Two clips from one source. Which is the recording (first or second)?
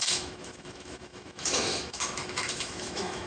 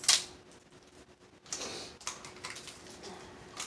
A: second